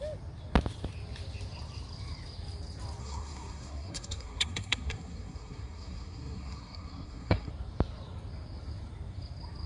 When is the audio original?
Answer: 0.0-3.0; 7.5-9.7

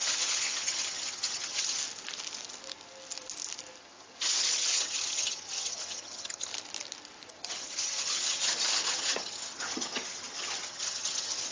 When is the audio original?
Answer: 1.8-3.8; 6.5-7.3

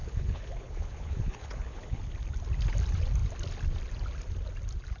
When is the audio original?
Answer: 2.0-5.0

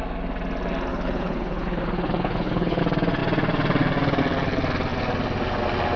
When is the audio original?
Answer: 0.0-0.9; 2.8-6.0

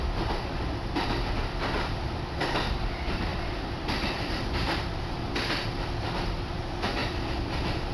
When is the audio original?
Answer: 0.0-3.3; 6.6-7.0